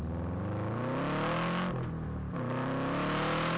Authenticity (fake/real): real